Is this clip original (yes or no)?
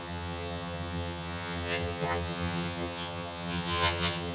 no